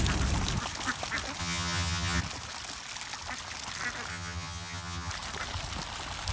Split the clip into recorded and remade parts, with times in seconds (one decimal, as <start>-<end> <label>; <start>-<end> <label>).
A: 0.0-1.4 recorded; 1.4-2.2 remade; 2.2-4.1 recorded; 4.1-5.1 remade; 5.1-6.3 recorded